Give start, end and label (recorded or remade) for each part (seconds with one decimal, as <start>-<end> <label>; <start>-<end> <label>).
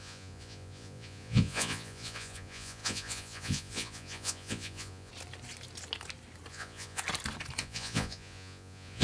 0.0-5.1 remade; 5.1-6.5 recorded; 6.5-7.0 remade; 7.0-7.6 recorded; 7.6-9.0 remade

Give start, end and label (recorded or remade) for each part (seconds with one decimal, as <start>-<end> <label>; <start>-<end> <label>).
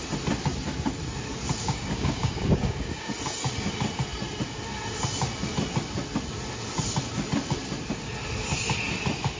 0.0-1.6 recorded; 1.6-3.1 remade; 3.1-9.4 recorded